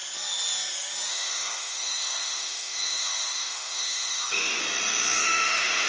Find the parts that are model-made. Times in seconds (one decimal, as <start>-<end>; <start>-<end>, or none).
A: 1.1-4.6; 5.2-5.9